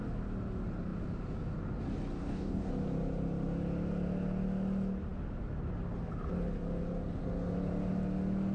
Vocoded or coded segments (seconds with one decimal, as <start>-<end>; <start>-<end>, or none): 2.2-2.7